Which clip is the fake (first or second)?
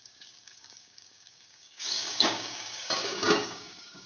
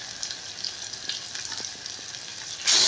first